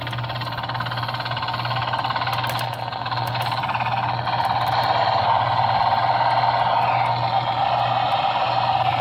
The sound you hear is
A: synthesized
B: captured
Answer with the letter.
B